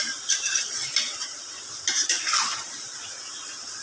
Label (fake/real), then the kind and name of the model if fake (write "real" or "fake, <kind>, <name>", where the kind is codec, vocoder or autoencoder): fake, vocoder, BigVGAN v2